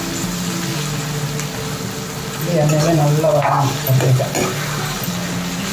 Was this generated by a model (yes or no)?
no